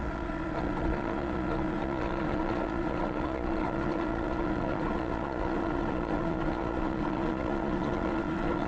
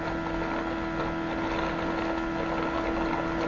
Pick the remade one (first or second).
first